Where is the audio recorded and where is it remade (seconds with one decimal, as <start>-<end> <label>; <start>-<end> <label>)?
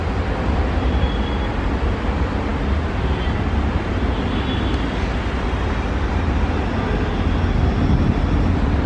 0.0-8.9 recorded